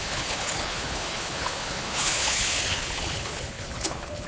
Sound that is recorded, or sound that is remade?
remade